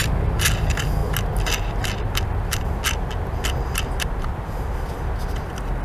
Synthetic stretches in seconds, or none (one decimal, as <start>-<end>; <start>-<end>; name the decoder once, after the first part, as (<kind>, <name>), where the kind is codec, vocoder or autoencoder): none